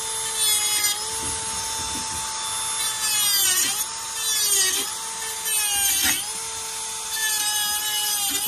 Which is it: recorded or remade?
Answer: recorded